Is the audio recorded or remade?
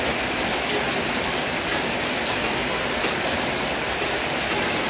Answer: recorded